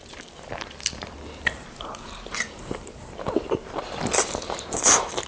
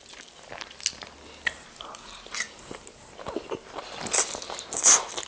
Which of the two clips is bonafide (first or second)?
second